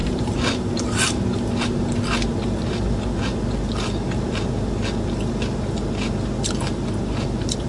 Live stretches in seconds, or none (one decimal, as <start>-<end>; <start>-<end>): 1.5-7.7